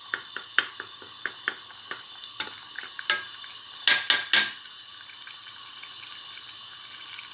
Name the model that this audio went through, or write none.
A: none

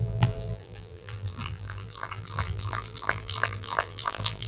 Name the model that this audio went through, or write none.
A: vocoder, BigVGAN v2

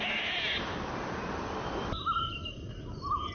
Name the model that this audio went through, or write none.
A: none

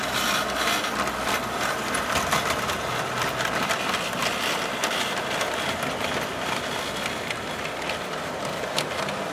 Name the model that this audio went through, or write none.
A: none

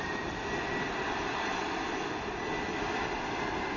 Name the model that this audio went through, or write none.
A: none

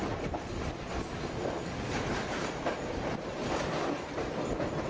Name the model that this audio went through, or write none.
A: none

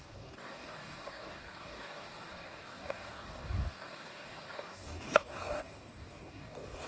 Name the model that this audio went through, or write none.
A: codec, DAC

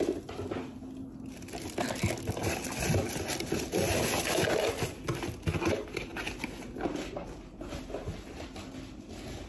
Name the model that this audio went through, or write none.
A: none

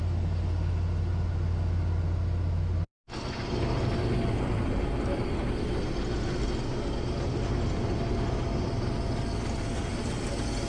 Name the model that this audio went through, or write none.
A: none